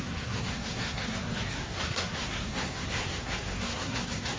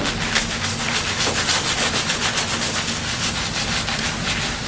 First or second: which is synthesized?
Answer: first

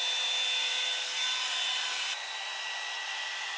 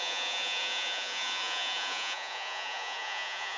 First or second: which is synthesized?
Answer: second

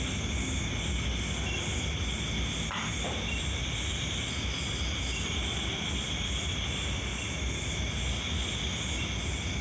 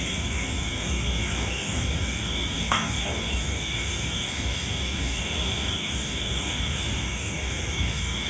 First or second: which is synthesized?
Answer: second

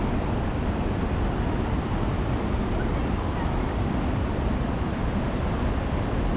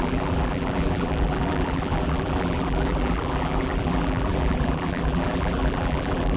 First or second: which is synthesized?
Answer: second